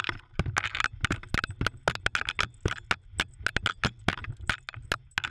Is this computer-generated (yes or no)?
no